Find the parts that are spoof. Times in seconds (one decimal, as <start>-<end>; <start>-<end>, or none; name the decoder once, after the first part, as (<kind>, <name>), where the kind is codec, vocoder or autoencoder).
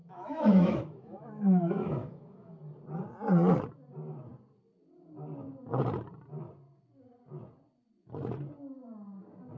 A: 0.0-2.5 (autoencoder, DAC-VAE)